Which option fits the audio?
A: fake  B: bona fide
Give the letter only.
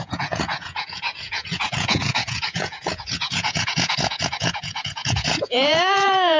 A